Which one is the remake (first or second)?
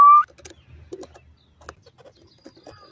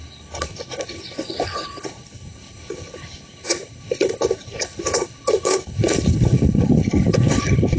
second